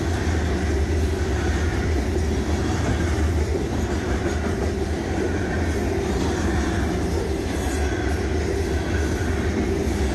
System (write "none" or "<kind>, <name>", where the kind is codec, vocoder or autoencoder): none